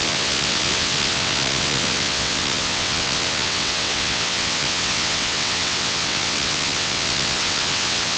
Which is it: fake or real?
fake